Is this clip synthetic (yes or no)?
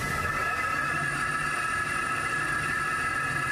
no